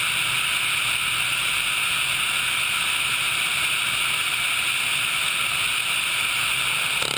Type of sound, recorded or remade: recorded